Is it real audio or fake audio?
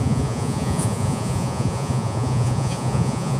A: fake